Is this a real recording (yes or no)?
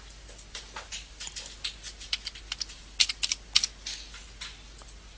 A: yes